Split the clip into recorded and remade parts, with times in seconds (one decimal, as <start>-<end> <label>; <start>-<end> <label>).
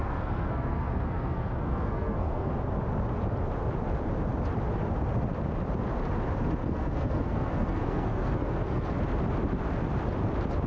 0.0-2.5 remade; 2.5-6.6 recorded; 6.6-8.9 remade; 8.9-10.7 recorded